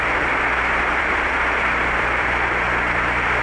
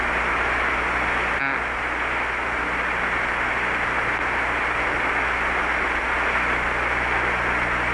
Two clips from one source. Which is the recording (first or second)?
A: second